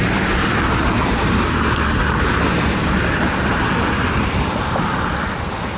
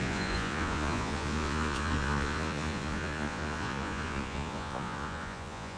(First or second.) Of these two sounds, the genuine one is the first